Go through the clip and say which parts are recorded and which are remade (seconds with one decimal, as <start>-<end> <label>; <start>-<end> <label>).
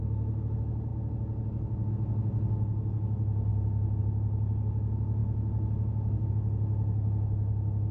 0.0-7.9 recorded